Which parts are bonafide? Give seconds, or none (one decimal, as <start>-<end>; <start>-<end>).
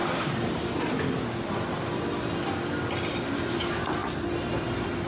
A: 0.0-5.1